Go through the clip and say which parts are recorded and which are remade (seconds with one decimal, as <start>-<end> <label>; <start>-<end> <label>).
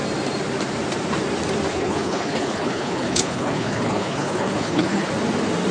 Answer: 0.0-1.7 recorded; 1.7-5.1 remade; 5.1-5.7 recorded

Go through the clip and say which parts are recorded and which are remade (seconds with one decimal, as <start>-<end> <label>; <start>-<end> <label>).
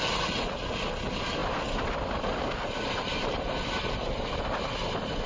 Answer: 0.0-5.3 recorded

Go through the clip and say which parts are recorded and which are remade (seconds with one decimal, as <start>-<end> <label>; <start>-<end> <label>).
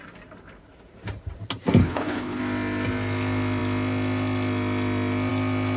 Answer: 0.0-1.8 recorded; 1.8-2.4 remade; 2.4-5.8 recorded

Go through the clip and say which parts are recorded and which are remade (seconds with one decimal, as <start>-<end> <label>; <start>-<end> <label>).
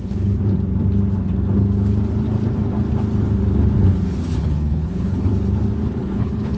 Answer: 0.0-0.4 remade; 0.4-4.4 recorded; 4.4-5.3 remade; 5.3-6.0 recorded; 6.0-6.6 remade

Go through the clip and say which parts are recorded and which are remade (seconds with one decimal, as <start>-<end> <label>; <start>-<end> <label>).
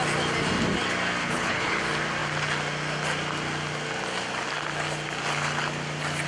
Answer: 0.0-1.2 recorded; 1.2-1.8 remade; 1.8-6.3 recorded